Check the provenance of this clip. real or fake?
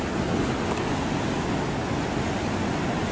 real